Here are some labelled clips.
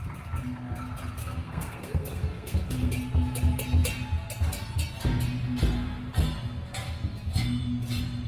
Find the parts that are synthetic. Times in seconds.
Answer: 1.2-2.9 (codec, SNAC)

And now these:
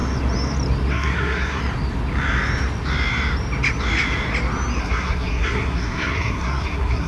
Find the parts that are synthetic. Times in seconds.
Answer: 0.9-1.6 (codec, SNAC); 4.8-7.1